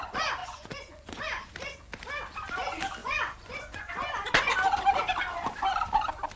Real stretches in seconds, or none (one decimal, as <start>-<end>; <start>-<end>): 0.0-0.4; 1.5-3.0; 3.9-6.4